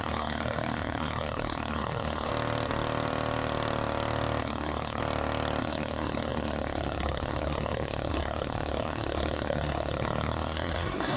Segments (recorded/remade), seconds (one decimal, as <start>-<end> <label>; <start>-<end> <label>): 0.0-2.3 remade; 2.3-4.4 recorded; 4.4-5.0 remade; 5.0-5.6 recorded; 5.6-11.2 remade